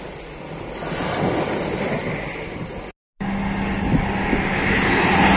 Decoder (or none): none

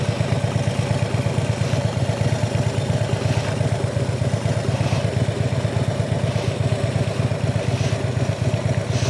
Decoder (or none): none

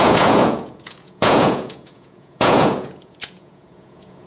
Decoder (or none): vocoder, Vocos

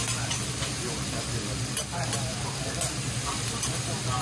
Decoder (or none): none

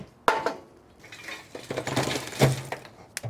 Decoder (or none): none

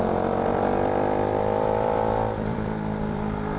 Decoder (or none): vocoder, BigVGAN v2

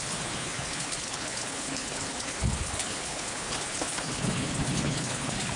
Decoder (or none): codec, HILCodec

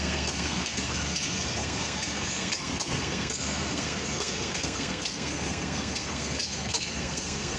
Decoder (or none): codec, SNAC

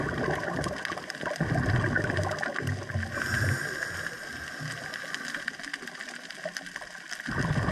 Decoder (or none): none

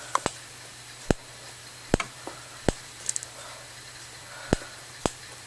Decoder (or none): none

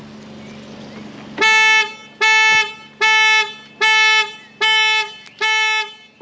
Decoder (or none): none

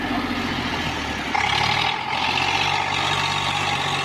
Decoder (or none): none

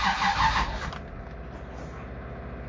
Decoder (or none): none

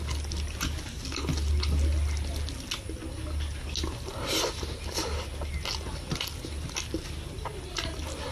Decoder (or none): none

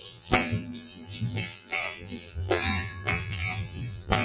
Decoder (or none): vocoder, BigVGAN v2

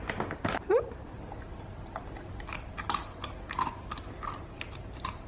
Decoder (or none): none